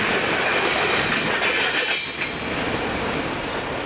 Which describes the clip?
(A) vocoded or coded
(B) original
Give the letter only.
B